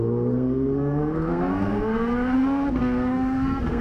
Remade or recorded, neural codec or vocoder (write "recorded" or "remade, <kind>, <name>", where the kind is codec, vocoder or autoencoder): remade, codec, SNAC